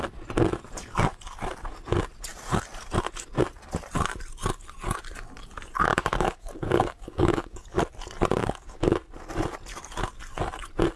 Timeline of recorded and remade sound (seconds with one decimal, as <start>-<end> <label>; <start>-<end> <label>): 0.0-5.9 recorded; 5.9-7.8 remade; 7.8-8.4 recorded; 8.4-8.9 remade; 8.9-11.0 recorded